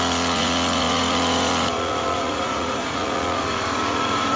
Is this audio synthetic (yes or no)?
yes